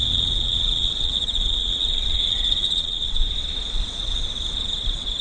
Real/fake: fake